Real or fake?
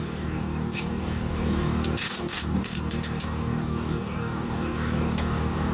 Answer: fake